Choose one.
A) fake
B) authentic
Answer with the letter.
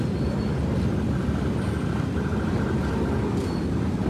B